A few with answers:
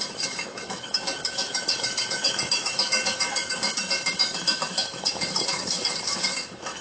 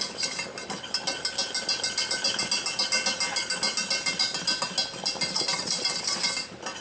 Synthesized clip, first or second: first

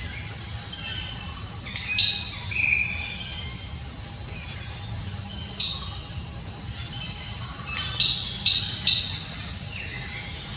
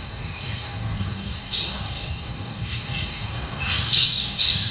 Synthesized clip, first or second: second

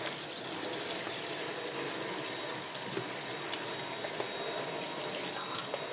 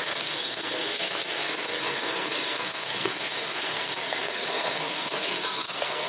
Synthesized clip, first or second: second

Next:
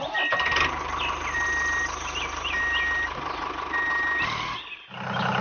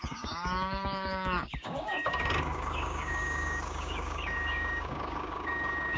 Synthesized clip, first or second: second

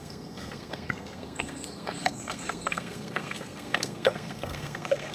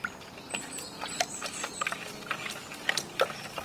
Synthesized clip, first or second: first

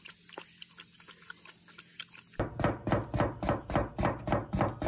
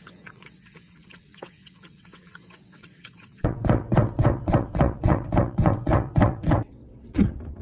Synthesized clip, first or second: second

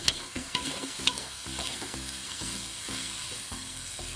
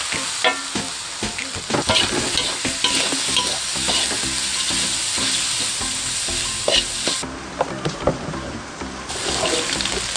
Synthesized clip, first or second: first